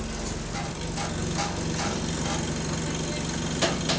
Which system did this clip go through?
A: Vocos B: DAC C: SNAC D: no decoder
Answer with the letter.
D